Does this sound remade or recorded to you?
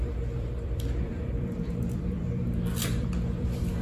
remade